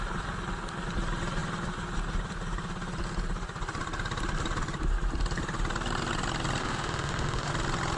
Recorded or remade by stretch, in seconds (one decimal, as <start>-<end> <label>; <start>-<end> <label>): 0.0-6.6 recorded; 6.6-7.5 remade; 7.5-8.0 recorded